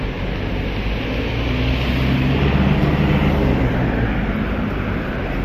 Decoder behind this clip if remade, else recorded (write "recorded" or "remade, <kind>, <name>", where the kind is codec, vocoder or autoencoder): recorded